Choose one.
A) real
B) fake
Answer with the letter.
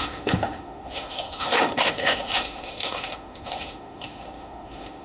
B